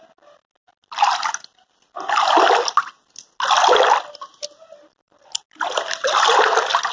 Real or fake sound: real